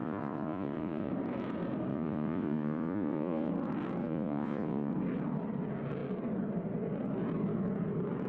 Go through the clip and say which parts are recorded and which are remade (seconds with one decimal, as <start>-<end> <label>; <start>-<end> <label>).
0.0-1.1 remade; 1.1-1.9 recorded; 1.9-3.5 remade; 3.5-4.0 recorded; 4.0-4.9 remade; 4.9-8.3 recorded